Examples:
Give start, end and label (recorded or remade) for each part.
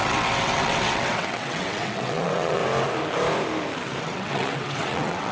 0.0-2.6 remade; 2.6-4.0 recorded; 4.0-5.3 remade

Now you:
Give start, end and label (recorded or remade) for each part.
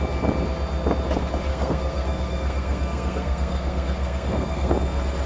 0.0-1.5 recorded; 1.5-4.7 remade; 4.7-5.3 recorded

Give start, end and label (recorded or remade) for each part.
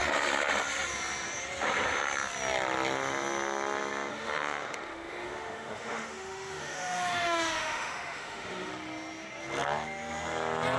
0.0-4.1 recorded; 4.1-8.7 remade; 8.7-10.8 recorded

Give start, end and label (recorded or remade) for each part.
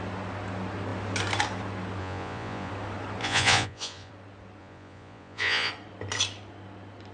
0.0-2.0 recorded; 2.0-2.7 remade; 2.7-3.2 recorded; 3.2-4.1 remade; 4.1-4.6 recorded; 4.6-5.7 remade; 5.7-7.1 recorded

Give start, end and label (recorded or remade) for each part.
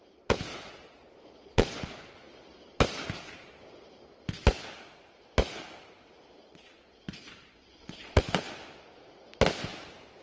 0.0-0.5 recorded; 0.5-2.0 remade; 2.0-6.4 recorded; 6.4-8.2 remade; 8.2-10.2 recorded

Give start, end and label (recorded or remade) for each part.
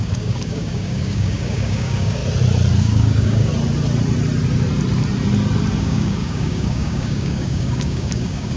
0.0-2.2 remade; 2.2-2.8 recorded; 2.8-3.5 remade; 3.5-5.8 recorded; 5.8-8.6 remade